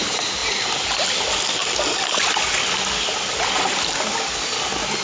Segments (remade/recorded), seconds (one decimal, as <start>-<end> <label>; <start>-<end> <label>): 0.0-5.0 recorded